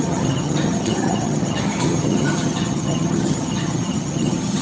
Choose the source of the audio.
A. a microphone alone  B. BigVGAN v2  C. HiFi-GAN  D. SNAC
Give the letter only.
C